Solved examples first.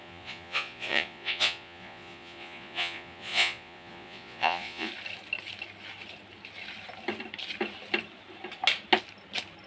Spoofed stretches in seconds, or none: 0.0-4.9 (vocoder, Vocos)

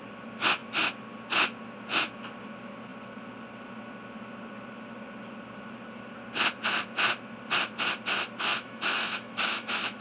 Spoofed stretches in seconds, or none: 8.5-10.0 (autoencoder, DAC-VAE)

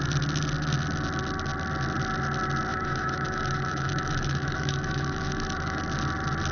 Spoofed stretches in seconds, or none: 2.7-5.8 (autoencoder, DAC-VAE)

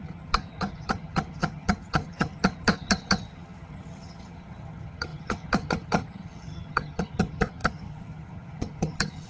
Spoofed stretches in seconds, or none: 0.0-9.3 (vocoder, HiFi-GAN)